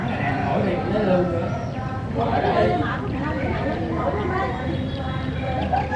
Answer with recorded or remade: recorded